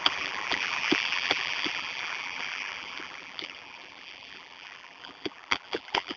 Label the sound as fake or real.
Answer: fake